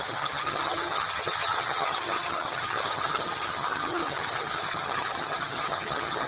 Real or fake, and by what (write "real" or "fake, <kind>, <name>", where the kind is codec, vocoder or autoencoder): fake, vocoder, HiFi-GAN